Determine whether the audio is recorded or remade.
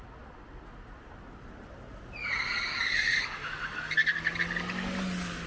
recorded